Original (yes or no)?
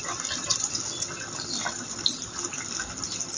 yes